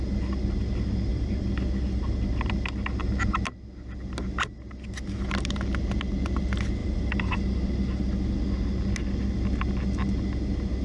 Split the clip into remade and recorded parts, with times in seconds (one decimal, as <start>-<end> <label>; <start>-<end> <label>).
0.0-1.1 recorded; 1.1-2.4 remade; 2.4-6.8 recorded; 6.8-7.7 remade; 7.7-10.8 recorded